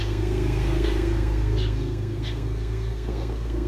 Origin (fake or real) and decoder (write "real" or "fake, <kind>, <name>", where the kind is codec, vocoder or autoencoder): fake, codec, SNAC